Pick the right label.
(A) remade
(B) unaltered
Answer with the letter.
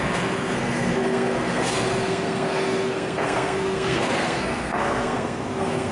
A